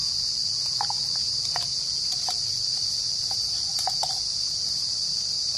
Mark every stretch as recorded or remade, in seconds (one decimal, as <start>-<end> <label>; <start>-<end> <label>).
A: 0.0-1.6 recorded; 1.6-5.6 remade